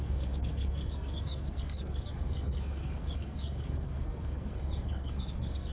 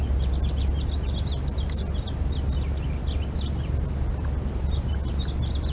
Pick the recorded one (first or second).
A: second